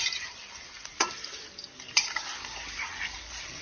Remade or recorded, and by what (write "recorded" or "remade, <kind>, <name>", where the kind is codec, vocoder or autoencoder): recorded